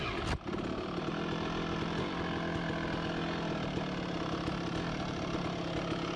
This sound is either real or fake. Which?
real